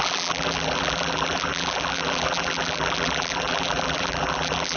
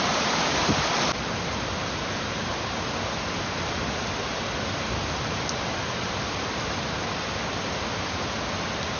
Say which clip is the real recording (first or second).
second